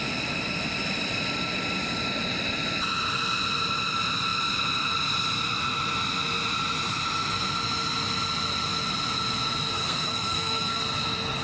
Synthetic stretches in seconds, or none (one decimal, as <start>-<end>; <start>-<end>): 9.7-10.8